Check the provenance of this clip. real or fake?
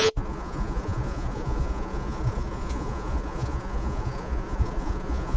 fake